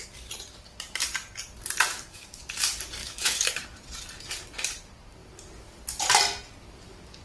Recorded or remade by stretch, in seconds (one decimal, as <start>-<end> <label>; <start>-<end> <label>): 0.0-1.9 recorded; 1.9-2.4 remade; 2.4-3.0 recorded; 3.0-3.5 remade; 3.5-7.2 recorded